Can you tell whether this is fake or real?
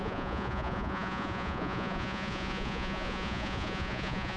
fake